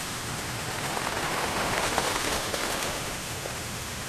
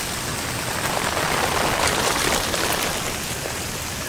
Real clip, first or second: second